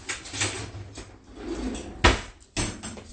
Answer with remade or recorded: recorded